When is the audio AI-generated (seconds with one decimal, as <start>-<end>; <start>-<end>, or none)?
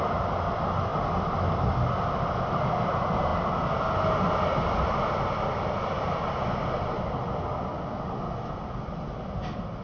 none